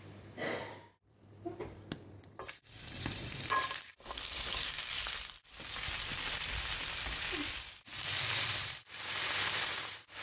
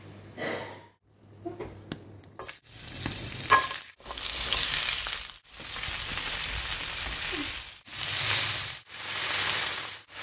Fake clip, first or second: first